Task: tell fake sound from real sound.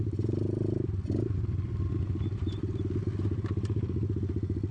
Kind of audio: real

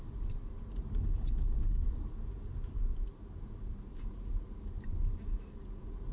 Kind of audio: fake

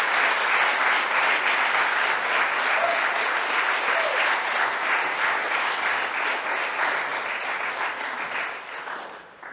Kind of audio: real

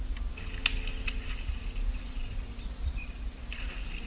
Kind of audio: real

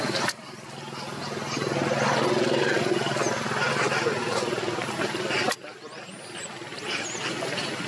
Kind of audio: real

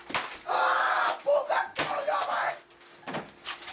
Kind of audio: real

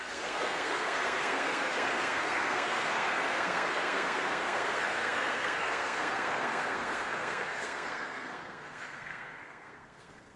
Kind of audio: fake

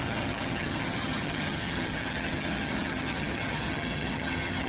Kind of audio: fake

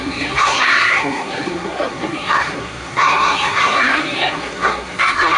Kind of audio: fake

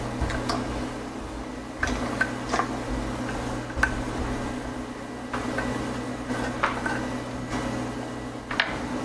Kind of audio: real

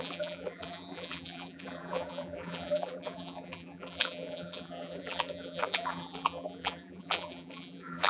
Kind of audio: fake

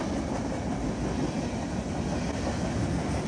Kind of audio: real